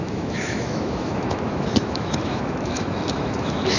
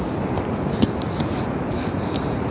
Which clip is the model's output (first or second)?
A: first